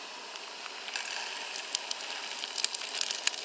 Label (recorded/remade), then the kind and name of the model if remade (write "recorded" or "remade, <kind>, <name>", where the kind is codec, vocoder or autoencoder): recorded